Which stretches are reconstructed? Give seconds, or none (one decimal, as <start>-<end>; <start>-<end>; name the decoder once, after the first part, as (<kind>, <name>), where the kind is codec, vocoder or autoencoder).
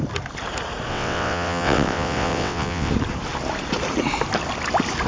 0.9-2.9 (vocoder, WaveNeXt)